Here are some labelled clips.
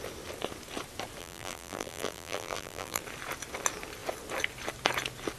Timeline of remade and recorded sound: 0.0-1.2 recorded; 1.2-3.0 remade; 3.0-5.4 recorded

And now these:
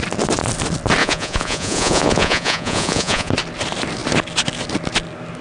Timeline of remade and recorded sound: 0.0-1.0 recorded; 1.0-3.3 remade; 3.3-5.4 recorded

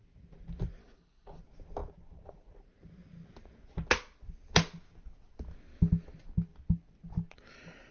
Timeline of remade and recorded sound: 0.0-0.8 recorded; 0.8-1.4 remade; 1.4-7.9 recorded

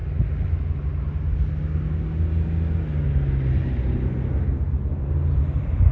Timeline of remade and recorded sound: 0.0-5.9 recorded